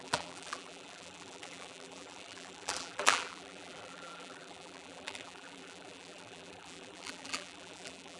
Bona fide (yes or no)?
no